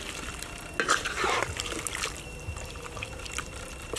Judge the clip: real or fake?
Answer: real